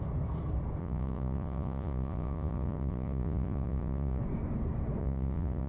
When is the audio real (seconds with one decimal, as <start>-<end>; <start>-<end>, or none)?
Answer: 0.0-0.8; 4.2-5.0